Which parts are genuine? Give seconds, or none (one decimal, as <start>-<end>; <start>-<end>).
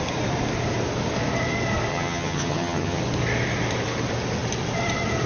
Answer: 0.0-1.9; 3.0-5.3